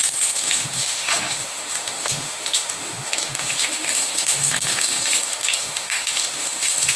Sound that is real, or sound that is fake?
fake